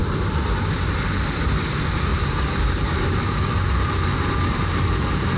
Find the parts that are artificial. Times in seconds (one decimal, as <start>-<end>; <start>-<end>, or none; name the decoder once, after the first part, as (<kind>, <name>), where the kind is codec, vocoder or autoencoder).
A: 2.1-5.4 (vocoder, BigVGAN v2)